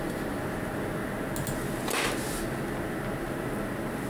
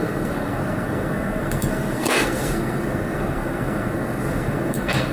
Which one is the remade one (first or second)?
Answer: second